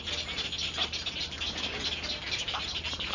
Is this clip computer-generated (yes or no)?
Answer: no